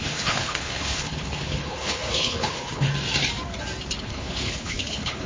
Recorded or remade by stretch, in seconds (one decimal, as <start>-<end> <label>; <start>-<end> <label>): 0.0-2.9 remade; 2.9-4.0 recorded; 4.0-5.3 remade